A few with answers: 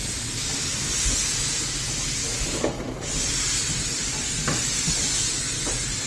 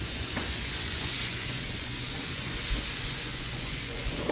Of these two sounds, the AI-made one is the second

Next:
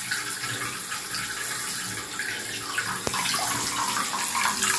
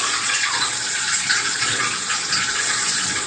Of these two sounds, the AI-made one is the second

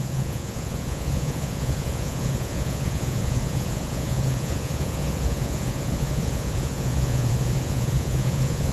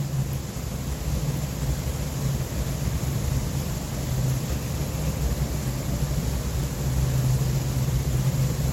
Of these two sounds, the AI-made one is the first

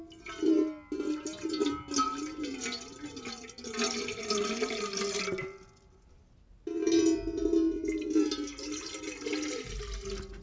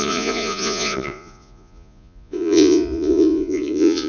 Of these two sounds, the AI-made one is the second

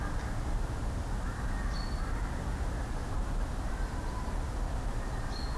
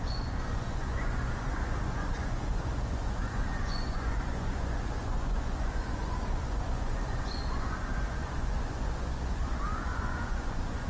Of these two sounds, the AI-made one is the second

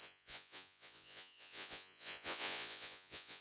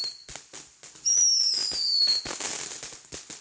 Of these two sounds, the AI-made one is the first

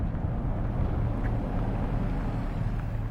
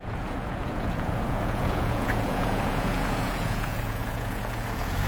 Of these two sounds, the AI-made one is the second